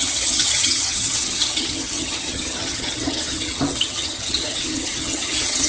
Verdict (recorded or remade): remade